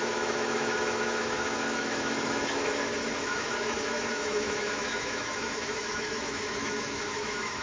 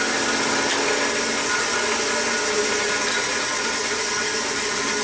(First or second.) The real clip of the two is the second